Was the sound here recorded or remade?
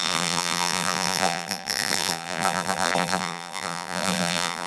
remade